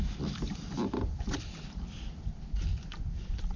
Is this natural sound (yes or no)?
yes